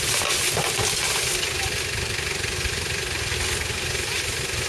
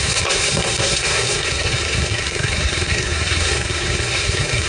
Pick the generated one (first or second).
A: second